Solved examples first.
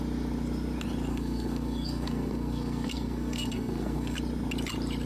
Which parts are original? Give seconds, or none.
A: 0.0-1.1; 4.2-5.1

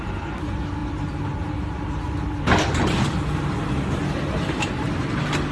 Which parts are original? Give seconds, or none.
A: 0.0-5.5

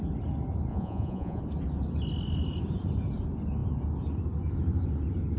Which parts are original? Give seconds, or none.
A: 0.0-0.7; 1.4-5.4

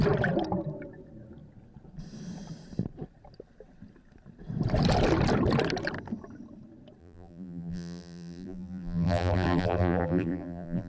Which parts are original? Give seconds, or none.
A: 0.0-7.0

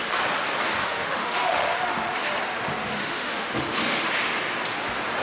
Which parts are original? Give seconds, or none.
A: 0.0-0.8; 2.3-2.8; 4.1-5.2

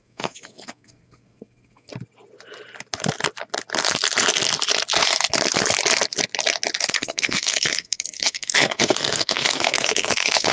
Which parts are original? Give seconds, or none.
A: 1.9-6.9